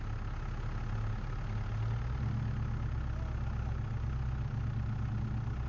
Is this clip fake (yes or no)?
no